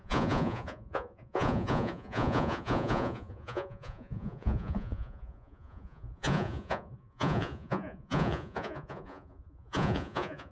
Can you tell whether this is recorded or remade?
remade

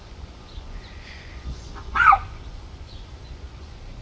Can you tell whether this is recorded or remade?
remade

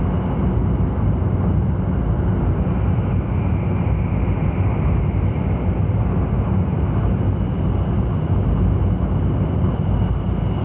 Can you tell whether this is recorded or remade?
recorded